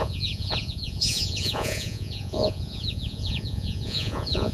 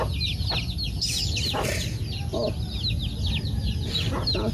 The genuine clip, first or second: second